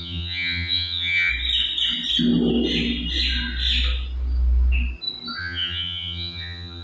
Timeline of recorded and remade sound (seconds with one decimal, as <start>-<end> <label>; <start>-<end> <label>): 0.0-1.3 remade; 1.3-5.4 recorded; 5.4-6.8 remade